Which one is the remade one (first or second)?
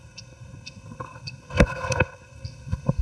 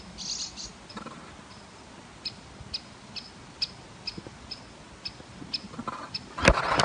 first